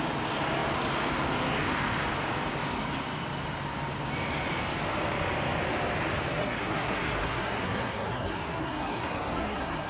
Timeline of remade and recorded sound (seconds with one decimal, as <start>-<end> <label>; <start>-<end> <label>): 0.0-6.3 recorded; 6.3-9.9 remade